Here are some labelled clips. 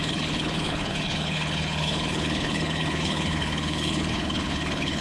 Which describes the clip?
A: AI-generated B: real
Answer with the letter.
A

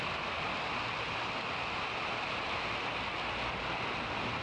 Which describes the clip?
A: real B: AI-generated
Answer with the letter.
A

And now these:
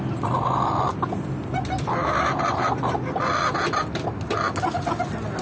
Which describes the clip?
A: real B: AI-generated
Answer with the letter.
A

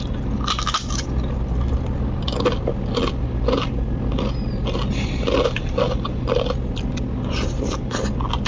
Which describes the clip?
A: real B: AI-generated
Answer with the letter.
A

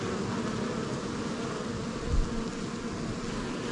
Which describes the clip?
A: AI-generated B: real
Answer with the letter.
B